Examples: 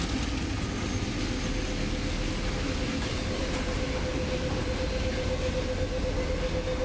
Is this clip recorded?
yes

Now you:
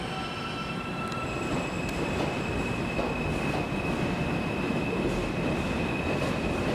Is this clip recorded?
yes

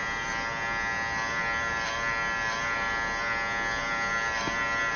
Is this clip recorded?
yes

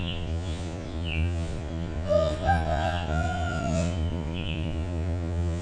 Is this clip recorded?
no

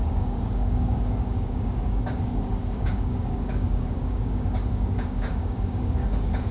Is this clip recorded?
no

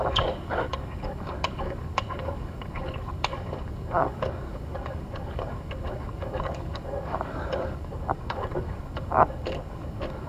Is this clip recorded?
no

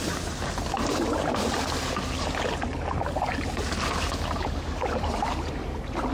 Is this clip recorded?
yes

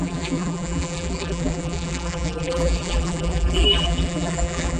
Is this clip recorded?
no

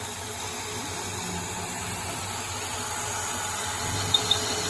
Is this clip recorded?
yes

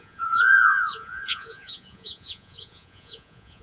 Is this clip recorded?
no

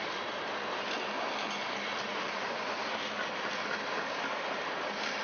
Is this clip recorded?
yes